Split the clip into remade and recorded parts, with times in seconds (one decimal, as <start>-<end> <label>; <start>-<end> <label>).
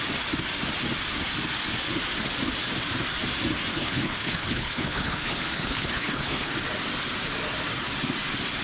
0.0-3.7 recorded; 3.7-6.5 remade; 6.5-8.6 recorded